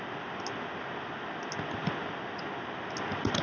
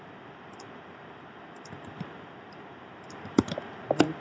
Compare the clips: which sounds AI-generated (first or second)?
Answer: second